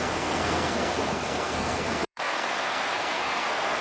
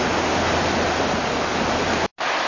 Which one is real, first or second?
second